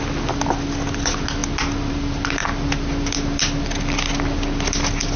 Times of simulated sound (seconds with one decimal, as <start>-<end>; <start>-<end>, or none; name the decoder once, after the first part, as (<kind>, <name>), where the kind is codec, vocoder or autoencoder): none

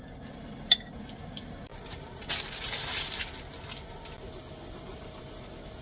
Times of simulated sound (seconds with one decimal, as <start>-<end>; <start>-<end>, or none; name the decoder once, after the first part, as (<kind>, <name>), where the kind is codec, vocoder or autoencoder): none